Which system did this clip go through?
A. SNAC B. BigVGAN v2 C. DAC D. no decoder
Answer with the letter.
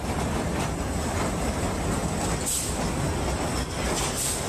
D